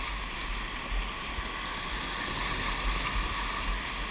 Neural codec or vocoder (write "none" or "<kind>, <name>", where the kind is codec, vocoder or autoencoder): none